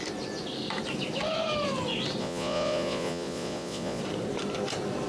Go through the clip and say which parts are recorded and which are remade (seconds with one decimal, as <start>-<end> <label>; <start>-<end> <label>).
0.0-2.2 recorded; 2.2-4.0 remade; 4.0-5.1 recorded